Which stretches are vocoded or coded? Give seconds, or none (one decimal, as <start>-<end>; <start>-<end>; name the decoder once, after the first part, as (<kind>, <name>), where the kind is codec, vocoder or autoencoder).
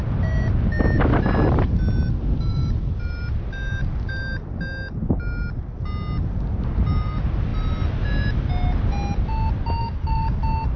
9.8-10.4 (codec, DAC)